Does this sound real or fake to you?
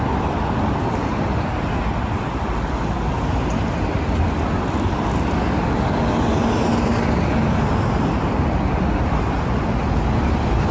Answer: real